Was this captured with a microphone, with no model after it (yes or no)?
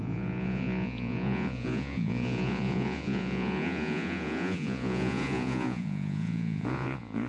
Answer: no